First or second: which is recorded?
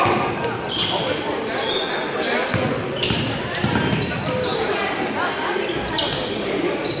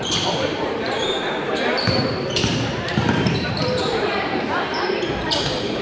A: first